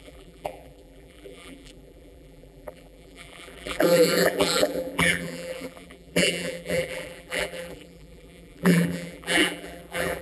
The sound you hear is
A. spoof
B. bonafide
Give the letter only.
A